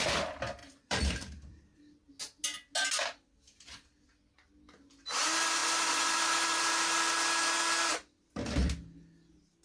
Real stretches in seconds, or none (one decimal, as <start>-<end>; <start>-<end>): 0.0-0.6; 2.1-9.6